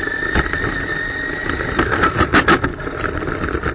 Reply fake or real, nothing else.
real